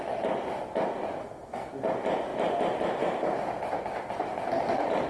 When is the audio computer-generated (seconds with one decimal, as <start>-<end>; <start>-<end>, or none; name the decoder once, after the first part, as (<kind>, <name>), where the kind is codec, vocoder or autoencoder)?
1.2-1.7 (codec, SNAC)